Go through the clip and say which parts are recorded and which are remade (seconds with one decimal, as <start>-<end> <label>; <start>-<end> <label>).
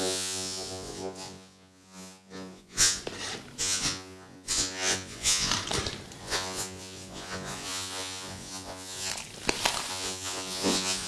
0.0-3.0 remade; 3.0-3.6 recorded; 3.6-5.5 remade; 5.5-6.2 recorded; 6.2-9.1 remade; 9.1-9.9 recorded; 9.9-11.1 remade